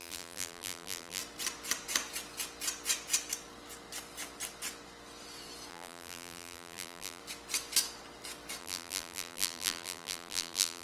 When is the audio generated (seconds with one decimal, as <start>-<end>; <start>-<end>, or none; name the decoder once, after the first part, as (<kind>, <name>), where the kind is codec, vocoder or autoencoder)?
0.0-1.2 (vocoder, BigVGAN v2); 5.7-7.2; 8.6-10.8